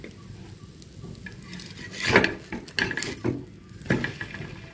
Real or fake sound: real